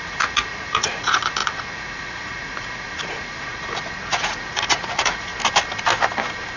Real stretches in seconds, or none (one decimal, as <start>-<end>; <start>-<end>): 5.3-6.6